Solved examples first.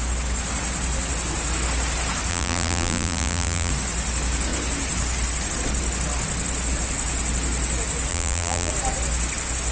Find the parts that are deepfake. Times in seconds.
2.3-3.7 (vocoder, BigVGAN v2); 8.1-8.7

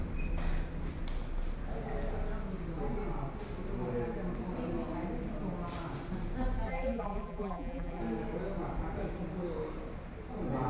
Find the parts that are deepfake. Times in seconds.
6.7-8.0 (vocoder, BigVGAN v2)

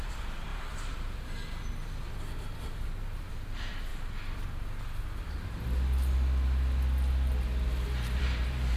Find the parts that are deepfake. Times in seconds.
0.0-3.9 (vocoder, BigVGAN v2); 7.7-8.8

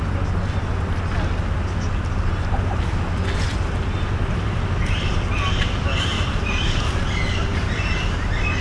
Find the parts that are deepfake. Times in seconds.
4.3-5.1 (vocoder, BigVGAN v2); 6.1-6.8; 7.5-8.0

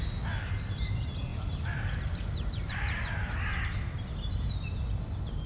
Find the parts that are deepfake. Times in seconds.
1.3-3.1 (vocoder, BigVGAN v2)

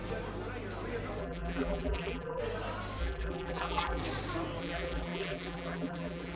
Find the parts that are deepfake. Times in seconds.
1.2-2.4 (vocoder, BigVGAN v2); 3.0-4.0; 4.6-6.4